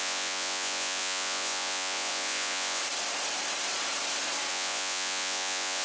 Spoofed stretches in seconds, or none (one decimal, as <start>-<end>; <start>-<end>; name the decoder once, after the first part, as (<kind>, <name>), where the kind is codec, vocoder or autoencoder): 0.0-2.8 (vocoder, Vocos); 4.5-5.8